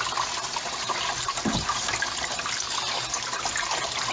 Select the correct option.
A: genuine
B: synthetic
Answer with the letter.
A